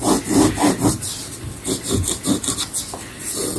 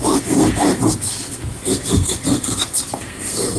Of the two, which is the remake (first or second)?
second